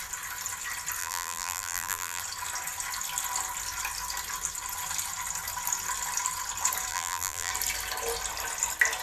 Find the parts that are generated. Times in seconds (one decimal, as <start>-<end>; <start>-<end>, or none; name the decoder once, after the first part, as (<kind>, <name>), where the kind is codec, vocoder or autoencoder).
1.0-2.2 (vocoder, BigVGAN v2); 6.9-7.5